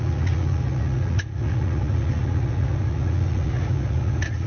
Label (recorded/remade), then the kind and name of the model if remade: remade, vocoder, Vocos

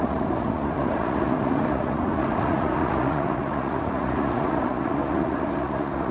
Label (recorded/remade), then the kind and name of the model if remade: remade, vocoder, Vocos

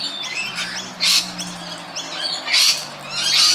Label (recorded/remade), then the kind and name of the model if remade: recorded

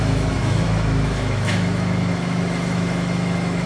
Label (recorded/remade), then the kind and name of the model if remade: remade, autoencoder, DAC-VAE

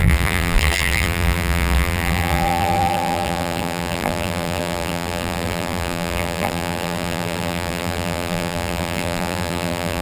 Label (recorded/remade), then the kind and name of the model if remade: remade, vocoder, BigVGAN v2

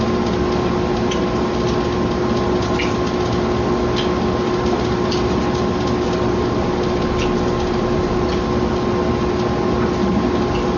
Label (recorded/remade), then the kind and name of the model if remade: recorded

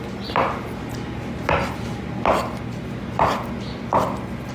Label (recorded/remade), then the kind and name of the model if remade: recorded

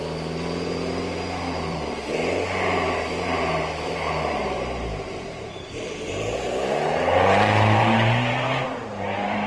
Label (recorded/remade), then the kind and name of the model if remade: remade, vocoder, BigVGAN v2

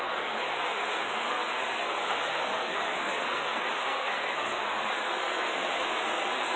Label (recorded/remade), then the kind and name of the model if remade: remade, codec, SNAC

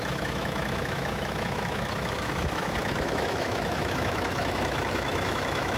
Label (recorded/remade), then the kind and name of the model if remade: remade, autoencoder, DAC-VAE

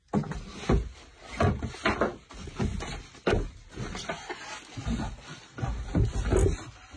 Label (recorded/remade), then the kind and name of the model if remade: recorded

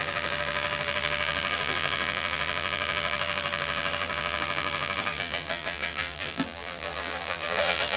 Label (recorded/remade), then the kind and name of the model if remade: remade, vocoder, BigVGAN v2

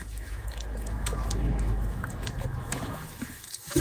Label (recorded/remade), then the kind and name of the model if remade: remade, autoencoder, DAC-VAE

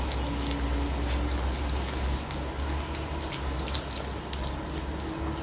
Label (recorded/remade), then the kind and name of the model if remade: recorded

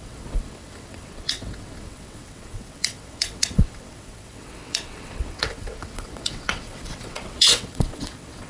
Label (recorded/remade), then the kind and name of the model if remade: remade, vocoder, WaveNeXt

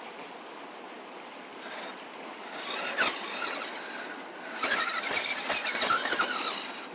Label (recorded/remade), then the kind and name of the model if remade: recorded